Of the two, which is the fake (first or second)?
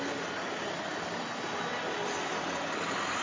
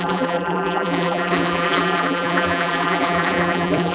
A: second